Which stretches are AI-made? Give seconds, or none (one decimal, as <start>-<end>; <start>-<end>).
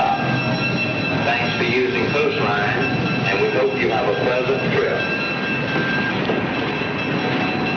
none